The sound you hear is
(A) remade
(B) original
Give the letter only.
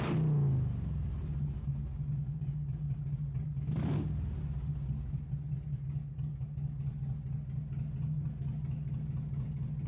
B